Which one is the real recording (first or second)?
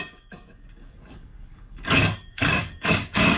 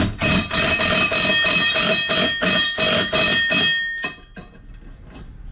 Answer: second